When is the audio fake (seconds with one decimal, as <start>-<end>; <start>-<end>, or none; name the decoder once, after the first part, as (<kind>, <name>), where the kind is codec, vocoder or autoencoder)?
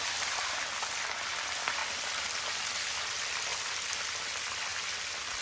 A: none